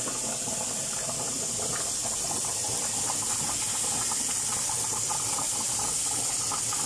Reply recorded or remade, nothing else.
recorded